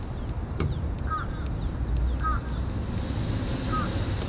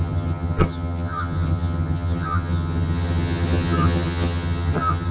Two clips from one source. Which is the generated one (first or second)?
second